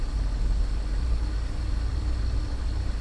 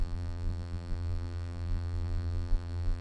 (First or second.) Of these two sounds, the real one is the first